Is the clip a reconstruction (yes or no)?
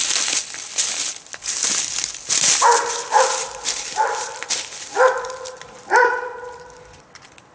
no